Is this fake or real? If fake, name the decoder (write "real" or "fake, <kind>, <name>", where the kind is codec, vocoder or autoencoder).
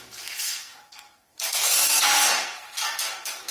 fake, codec, SNAC